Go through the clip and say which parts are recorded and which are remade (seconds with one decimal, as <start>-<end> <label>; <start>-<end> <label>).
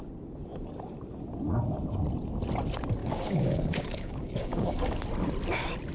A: 0.0-3.0 recorded; 3.0-5.0 remade; 5.0-5.9 recorded